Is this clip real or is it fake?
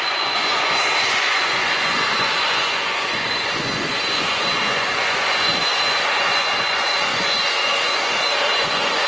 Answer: fake